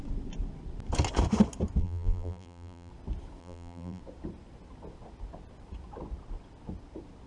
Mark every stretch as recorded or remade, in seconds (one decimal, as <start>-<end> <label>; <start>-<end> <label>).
0.0-1.8 recorded; 1.8-2.9 remade; 2.9-3.4 recorded; 3.4-4.0 remade; 4.0-7.3 recorded